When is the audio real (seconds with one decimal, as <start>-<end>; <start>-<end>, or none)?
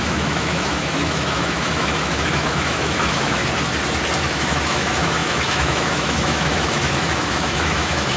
3.4-4.3